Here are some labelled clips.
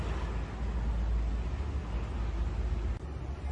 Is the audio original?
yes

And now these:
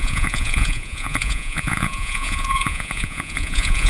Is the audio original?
no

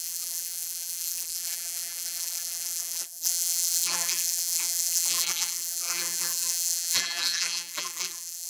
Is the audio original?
no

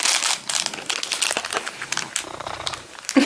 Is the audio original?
yes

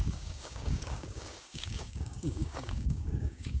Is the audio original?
no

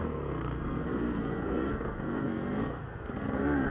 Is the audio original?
no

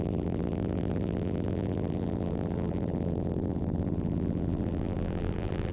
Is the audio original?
no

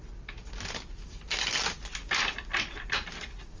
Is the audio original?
yes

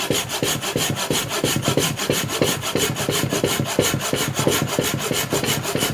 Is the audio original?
yes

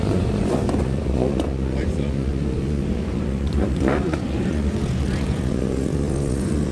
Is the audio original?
no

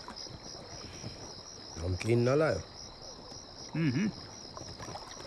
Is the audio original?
yes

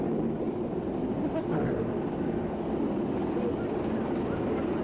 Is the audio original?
yes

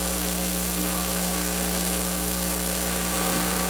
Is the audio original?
no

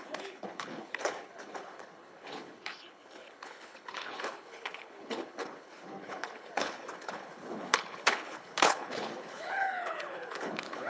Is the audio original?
no